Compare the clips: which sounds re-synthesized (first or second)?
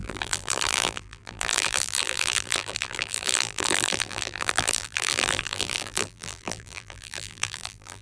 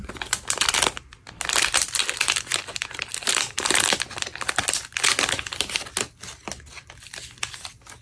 first